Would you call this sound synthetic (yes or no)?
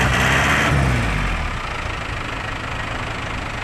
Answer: no